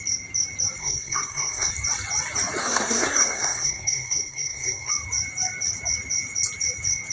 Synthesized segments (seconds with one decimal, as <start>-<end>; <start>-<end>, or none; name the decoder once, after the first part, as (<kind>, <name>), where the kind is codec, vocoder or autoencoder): 0.8-1.7 (codec, SNAC); 2.6-4.9